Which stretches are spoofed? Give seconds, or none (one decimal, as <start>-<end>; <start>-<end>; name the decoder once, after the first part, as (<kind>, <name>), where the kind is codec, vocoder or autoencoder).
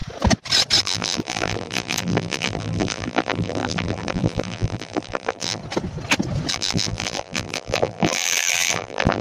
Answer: 0.8-5.6 (vocoder, BigVGAN v2); 6.5-9.2